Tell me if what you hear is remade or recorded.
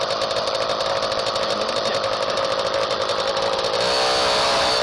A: recorded